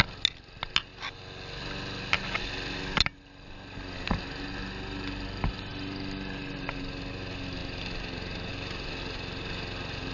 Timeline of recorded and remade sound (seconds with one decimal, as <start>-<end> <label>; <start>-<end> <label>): 0.0-10.1 recorded